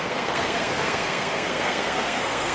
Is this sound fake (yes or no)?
yes